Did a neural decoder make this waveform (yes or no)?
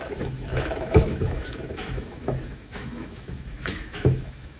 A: yes